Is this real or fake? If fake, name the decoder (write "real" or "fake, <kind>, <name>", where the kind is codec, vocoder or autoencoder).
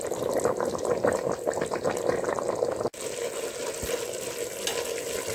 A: real